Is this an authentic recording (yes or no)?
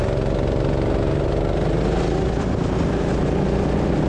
yes